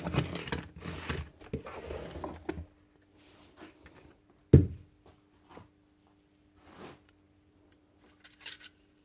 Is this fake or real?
real